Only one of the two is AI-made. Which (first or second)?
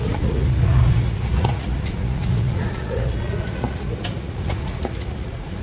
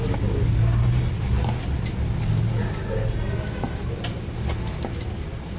first